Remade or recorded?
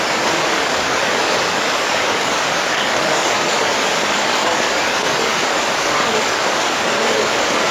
remade